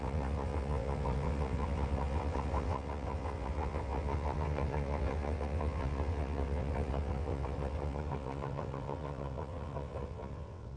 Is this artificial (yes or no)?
yes